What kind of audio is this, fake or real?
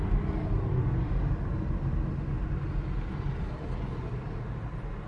real